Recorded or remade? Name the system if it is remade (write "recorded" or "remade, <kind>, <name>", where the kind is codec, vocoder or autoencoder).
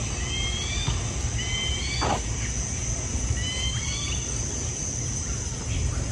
recorded